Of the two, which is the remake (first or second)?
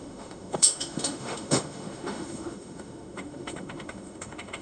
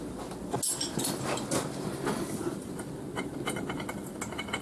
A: first